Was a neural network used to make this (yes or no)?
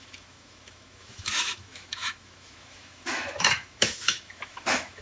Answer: yes